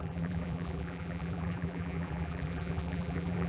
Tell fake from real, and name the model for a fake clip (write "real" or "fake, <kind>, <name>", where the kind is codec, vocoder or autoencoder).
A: fake, vocoder, BigVGAN v2